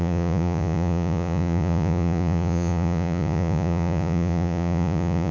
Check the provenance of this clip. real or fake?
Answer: fake